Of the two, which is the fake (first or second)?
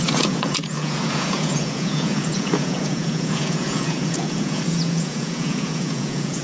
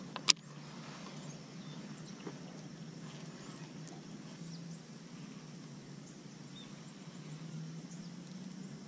first